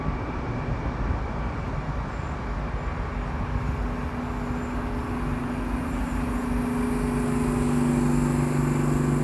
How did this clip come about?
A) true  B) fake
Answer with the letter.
A